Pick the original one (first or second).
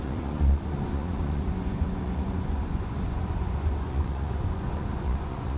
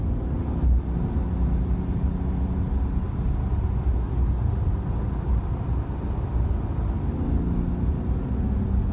second